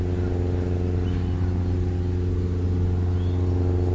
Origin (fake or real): real